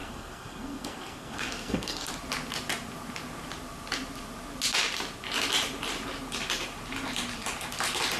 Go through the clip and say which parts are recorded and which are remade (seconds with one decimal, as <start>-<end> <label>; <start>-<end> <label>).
0.0-2.1 remade; 2.1-8.2 recorded